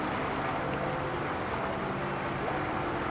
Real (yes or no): yes